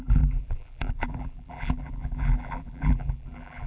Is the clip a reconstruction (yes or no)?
yes